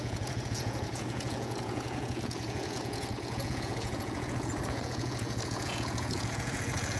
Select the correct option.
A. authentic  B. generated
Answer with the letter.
B